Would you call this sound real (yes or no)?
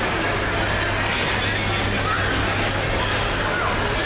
yes